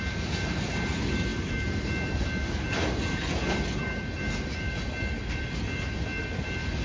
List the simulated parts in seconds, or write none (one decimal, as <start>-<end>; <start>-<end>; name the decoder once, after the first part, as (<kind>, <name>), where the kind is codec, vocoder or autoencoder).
none